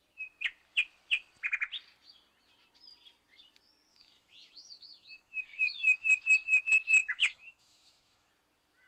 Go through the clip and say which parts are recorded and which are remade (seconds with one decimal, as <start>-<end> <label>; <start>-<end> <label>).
0.0-3.9 recorded; 3.9-6.6 remade; 6.6-7.0 recorded; 7.0-8.3 remade; 8.3-8.9 recorded